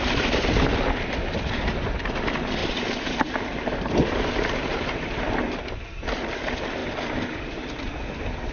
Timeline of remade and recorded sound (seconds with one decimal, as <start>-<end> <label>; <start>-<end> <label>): 0.0-2.6 recorded; 2.6-3.9 remade; 3.9-8.5 recorded